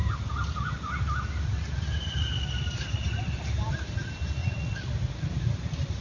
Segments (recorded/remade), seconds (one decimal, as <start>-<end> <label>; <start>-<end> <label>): 0.0-4.4 recorded; 4.4-4.9 remade; 4.9-6.0 recorded